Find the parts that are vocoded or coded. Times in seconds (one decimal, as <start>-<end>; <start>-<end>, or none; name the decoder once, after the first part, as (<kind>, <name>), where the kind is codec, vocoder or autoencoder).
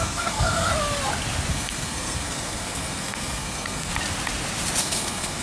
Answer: 0.0-0.7 (codec, SNAC); 1.5-3.9; 4.8-5.4